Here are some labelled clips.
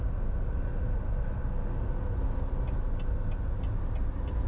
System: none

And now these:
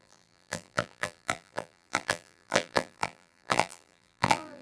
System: vocoder, BigVGAN v2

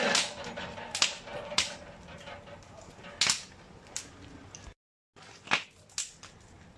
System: none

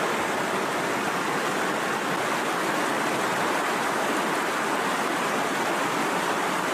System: none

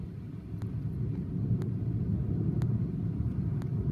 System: none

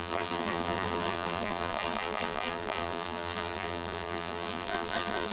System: vocoder, BigVGAN v2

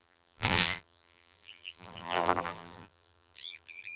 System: vocoder, BigVGAN v2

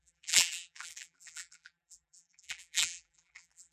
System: vocoder, BigVGAN v2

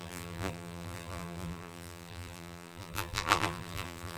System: vocoder, BigVGAN v2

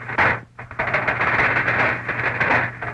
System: none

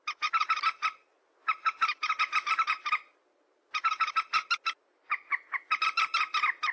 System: none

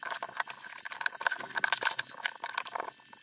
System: none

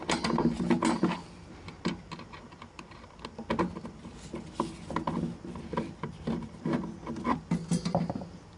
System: none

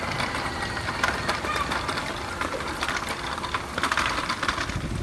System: vocoder, BigVGAN v2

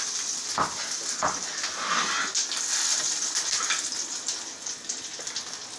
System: none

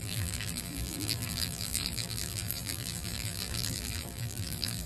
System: vocoder, BigVGAN v2